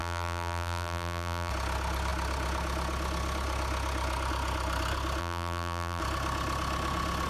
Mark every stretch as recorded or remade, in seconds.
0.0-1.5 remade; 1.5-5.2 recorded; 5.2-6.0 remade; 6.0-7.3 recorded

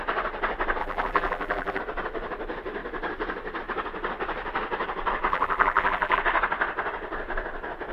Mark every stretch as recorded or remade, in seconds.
0.0-0.8 recorded; 0.8-1.8 remade; 1.8-5.3 recorded; 5.3-6.2 remade; 6.2-7.9 recorded